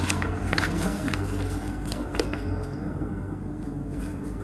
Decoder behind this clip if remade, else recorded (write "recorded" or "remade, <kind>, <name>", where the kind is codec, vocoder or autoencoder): remade, codec, SNAC